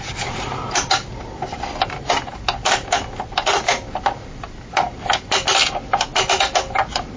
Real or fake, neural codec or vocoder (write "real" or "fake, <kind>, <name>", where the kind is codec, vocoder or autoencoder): real